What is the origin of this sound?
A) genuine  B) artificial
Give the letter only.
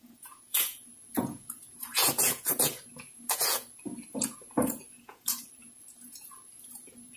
B